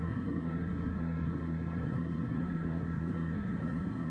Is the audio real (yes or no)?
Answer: no